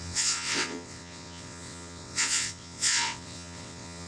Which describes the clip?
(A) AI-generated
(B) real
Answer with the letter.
A